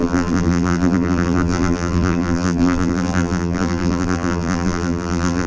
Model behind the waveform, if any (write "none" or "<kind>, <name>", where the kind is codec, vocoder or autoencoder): vocoder, BigVGAN v2